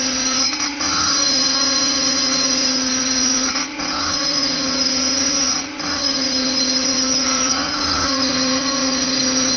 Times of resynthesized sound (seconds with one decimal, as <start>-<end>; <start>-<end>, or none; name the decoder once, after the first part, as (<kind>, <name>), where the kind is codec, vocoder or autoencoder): 0.0-9.6 (vocoder, Vocos)